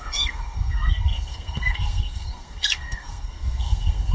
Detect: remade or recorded remade